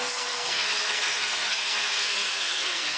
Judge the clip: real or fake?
fake